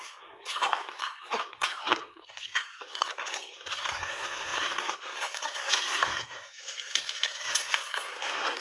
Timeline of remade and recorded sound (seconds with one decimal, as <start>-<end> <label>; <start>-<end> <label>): 0.0-8.6 remade